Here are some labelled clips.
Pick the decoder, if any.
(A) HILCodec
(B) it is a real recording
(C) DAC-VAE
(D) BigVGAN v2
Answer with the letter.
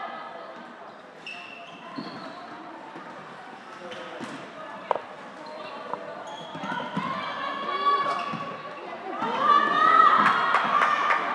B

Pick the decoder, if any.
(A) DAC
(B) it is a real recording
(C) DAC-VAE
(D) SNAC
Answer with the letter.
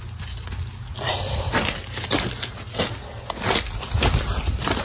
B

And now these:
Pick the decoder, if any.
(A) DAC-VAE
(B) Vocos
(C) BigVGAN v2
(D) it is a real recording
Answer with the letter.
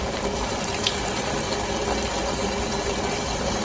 D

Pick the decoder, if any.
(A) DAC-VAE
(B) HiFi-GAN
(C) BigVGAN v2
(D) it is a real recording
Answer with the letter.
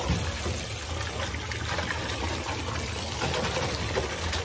D